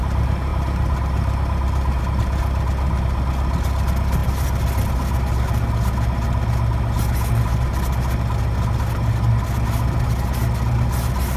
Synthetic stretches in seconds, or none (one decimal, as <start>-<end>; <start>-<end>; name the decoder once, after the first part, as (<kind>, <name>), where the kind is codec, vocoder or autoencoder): none